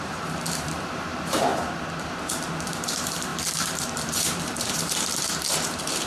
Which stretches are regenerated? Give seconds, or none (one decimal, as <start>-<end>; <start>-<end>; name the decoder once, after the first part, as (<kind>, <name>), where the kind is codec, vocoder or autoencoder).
0.0-1.5 (vocoder, BigVGAN v2); 2.0-6.1